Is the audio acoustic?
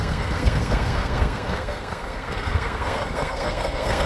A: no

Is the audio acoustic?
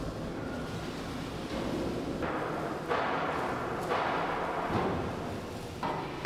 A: yes